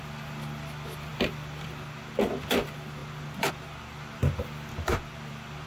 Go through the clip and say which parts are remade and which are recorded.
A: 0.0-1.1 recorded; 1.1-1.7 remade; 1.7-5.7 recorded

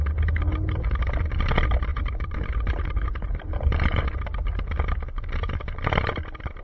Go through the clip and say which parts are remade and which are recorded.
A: 0.0-1.9 recorded; 1.9-4.0 remade; 4.0-6.6 recorded

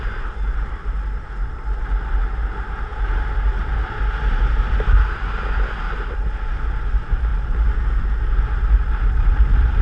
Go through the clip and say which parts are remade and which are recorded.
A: 0.0-9.8 recorded

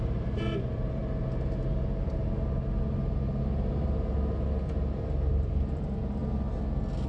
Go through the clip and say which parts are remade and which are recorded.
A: 0.0-1.0 remade; 1.0-5.3 recorded; 5.3-6.2 remade; 6.2-7.1 recorded